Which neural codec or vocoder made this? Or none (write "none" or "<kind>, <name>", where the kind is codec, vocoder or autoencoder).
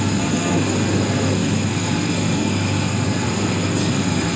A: codec, SNAC